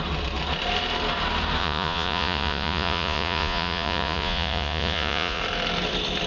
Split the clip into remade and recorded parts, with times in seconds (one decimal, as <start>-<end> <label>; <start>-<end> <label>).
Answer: 0.0-1.6 recorded; 1.6-5.4 remade; 5.4-6.3 recorded